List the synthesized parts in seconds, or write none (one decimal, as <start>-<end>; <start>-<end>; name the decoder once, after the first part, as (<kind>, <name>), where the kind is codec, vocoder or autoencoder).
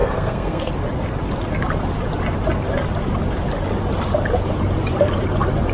0.0-0.7 (codec, SNAC)